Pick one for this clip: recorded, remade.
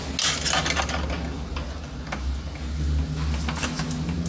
recorded